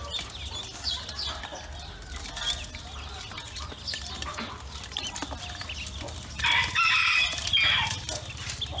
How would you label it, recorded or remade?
recorded